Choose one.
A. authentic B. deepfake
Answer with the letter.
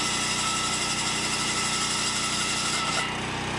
A